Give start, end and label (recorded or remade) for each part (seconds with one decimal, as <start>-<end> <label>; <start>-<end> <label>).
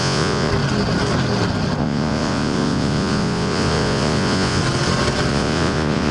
0.0-0.5 remade; 0.5-1.8 recorded; 1.8-4.6 remade; 4.6-5.3 recorded; 5.3-6.1 remade